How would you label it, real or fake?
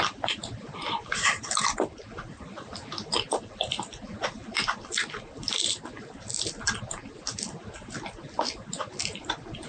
fake